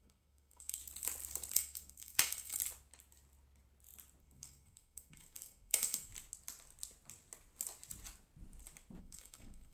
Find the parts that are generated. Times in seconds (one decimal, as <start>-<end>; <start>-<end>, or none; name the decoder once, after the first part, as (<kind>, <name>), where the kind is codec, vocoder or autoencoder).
0.0-0.8 (codec, SNAC); 1.5-2.6; 4.2-6.1; 9.0-9.7